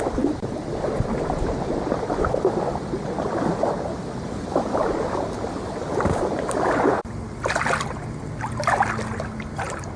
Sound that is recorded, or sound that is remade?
recorded